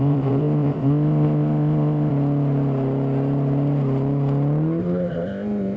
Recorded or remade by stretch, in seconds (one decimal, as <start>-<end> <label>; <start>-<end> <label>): 0.0-2.1 remade; 2.1-4.8 recorded; 4.8-5.8 remade